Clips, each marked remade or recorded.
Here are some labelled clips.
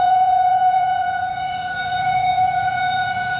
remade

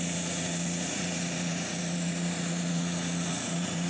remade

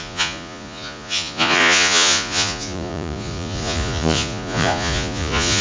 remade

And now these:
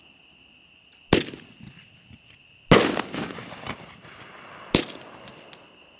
recorded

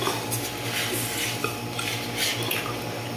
recorded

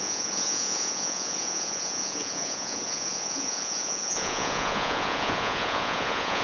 remade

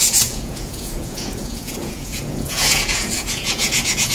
remade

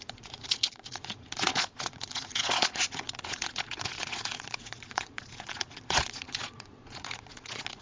remade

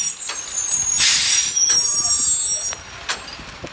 recorded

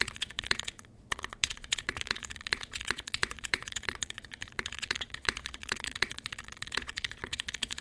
remade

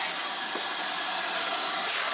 recorded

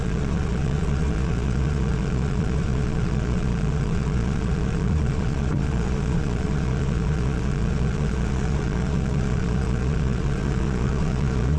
remade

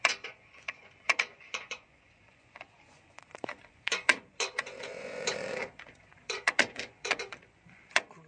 remade